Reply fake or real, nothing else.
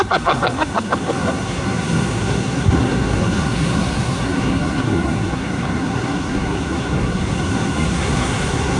fake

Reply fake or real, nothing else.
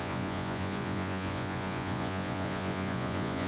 fake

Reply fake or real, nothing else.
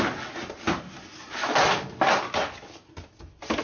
real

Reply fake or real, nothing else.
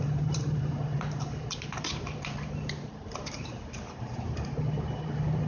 fake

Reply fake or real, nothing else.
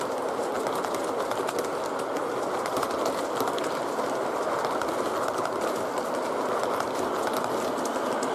real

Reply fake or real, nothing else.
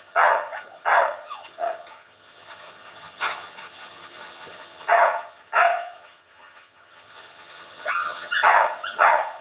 fake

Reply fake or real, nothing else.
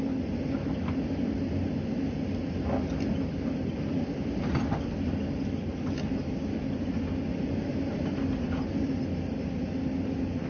real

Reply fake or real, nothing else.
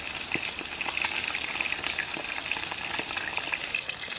real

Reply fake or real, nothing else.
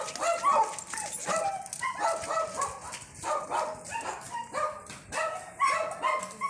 real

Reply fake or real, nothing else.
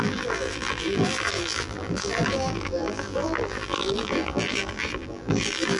fake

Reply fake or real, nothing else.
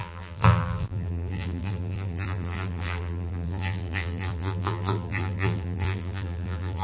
fake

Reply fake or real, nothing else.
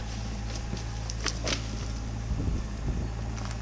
real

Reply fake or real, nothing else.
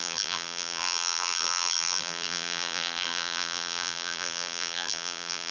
fake